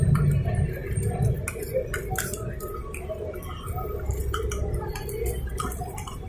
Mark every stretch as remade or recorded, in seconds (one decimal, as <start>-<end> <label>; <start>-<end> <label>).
0.0-0.8 remade; 0.8-4.2 recorded; 4.2-6.3 remade